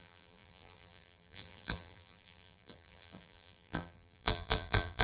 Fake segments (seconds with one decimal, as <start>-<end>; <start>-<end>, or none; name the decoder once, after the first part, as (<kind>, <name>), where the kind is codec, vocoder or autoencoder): 0.0-5.0 (vocoder, BigVGAN v2)